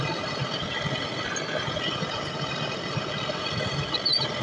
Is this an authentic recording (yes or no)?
yes